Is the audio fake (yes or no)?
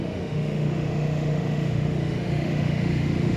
yes